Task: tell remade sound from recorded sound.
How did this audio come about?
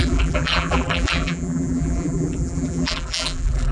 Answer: remade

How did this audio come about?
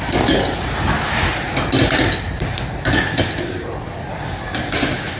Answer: recorded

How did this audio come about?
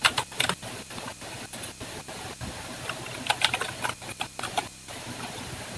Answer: remade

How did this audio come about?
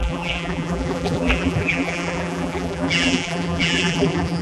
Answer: remade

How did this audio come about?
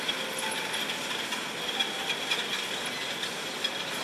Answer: recorded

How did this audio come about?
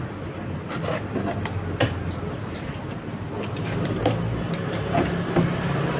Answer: recorded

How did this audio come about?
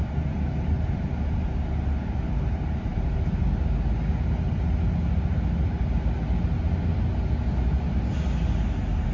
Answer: recorded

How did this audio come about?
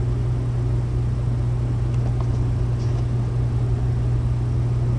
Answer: recorded